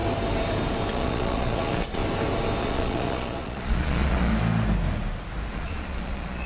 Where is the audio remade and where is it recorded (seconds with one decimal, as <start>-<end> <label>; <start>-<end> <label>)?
0.0-0.9 recorded; 0.9-2.0 remade; 2.0-2.6 recorded; 2.6-4.3 remade; 4.3-5.5 recorded; 5.5-6.5 remade